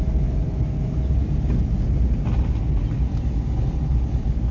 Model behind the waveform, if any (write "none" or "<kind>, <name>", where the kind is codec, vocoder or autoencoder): none